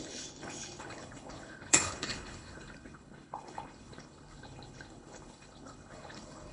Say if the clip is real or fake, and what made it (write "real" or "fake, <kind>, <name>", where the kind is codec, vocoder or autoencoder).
fake, codec, HILCodec